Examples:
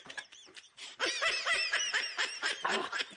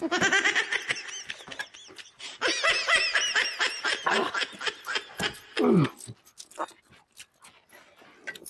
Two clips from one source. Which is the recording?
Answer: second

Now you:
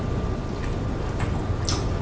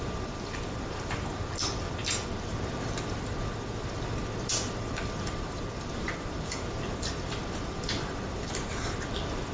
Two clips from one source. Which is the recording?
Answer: first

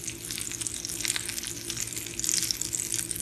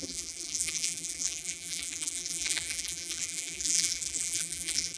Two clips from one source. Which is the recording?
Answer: first